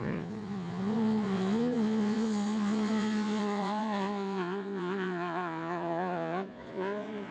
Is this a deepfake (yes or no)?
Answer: yes